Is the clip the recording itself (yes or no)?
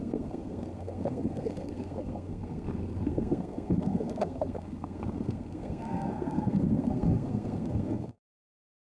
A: no